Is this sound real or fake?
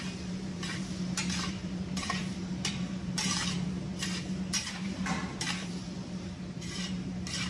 fake